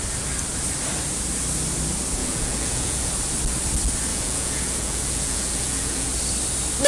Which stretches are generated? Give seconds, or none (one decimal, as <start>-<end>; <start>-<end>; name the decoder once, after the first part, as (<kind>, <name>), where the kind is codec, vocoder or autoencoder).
2.2-3.1 (vocoder, Vocos); 4.1-6.1